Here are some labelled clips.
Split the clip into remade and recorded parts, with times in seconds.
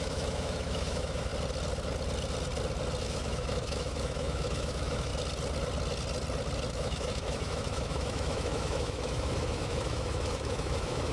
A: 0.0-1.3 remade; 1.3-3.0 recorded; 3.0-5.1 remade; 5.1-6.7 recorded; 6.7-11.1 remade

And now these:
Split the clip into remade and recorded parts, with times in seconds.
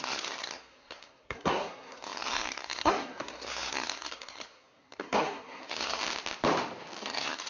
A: 0.0-6.0 remade; 6.0-7.0 recorded; 7.0-7.5 remade